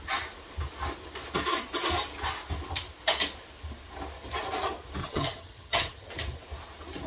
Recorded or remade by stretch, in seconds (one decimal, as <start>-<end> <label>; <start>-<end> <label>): 0.0-5.0 recorded; 5.0-6.1 remade; 6.1-7.1 recorded

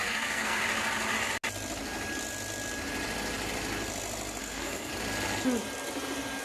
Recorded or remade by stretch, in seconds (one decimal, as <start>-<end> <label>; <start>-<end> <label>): 0.0-0.6 remade; 0.6-4.4 recorded; 4.4-4.9 remade; 4.9-6.4 recorded